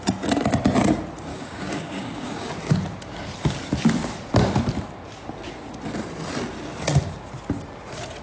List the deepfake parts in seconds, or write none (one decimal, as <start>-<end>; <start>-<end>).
1.3-2.5